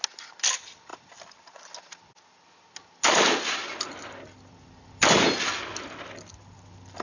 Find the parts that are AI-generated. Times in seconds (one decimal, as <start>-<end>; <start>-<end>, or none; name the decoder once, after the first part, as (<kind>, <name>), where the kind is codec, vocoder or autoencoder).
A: none